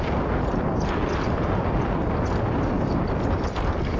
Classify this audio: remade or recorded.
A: recorded